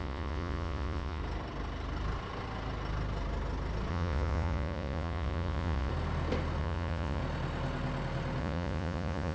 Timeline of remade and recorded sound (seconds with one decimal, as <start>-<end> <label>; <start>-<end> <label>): 0.0-1.2 remade; 1.2-3.9 recorded; 3.9-5.9 remade; 5.9-6.6 recorded; 6.6-7.2 remade; 7.2-8.4 recorded; 8.4-9.3 remade